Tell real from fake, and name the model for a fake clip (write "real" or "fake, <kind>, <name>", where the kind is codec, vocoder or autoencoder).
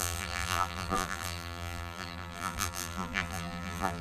fake, vocoder, BigVGAN v2